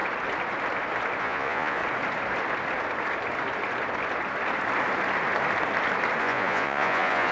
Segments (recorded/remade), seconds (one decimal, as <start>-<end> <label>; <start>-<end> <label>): 0.0-1.2 recorded; 1.2-1.8 remade; 1.8-6.2 recorded; 6.2-7.3 remade